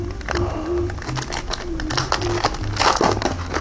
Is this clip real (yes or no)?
yes